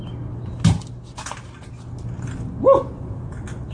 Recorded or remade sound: recorded